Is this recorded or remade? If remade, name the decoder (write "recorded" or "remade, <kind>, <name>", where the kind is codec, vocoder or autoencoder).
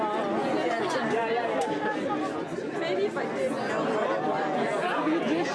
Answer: recorded